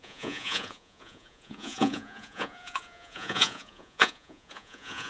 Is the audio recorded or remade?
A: remade